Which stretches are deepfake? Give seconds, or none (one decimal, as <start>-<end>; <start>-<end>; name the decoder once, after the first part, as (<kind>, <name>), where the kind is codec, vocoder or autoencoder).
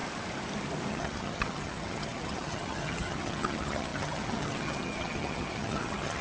0.9-6.2 (vocoder, HiFi-GAN)